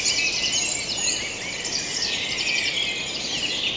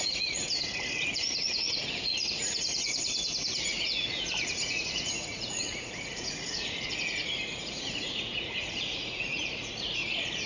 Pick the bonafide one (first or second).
first